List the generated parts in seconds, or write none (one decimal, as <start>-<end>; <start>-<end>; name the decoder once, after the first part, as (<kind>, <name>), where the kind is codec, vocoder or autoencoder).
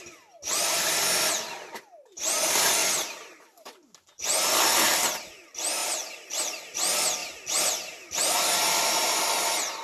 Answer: none